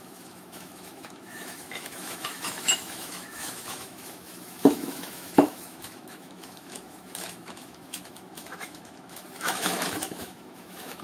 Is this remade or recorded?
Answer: remade